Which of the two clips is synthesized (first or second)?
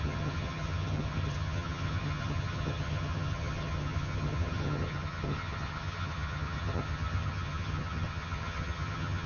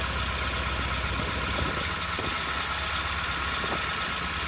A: first